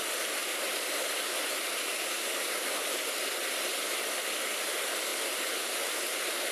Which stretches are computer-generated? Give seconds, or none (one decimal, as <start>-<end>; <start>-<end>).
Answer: none